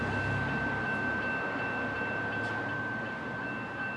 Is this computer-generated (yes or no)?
no